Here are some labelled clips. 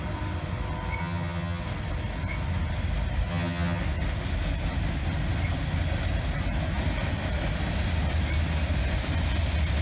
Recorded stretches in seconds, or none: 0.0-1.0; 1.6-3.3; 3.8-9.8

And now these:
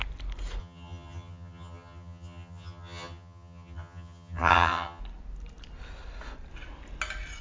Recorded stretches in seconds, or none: 0.0-0.6; 5.0-7.4